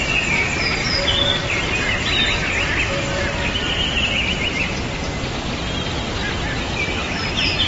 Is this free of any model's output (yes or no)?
yes